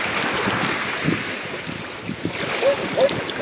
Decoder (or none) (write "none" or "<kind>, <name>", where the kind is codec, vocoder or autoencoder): none